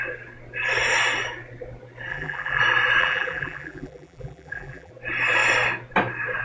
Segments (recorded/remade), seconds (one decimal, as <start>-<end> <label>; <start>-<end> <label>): 0.0-2.1 recorded; 2.1-2.6 remade; 2.6-3.0 recorded; 3.0-4.9 remade; 4.9-6.4 recorded